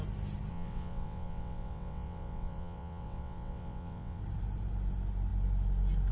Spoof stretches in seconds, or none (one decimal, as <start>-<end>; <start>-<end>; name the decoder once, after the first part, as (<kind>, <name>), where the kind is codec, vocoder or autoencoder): 0.5-4.2 (vocoder, WaveNeXt)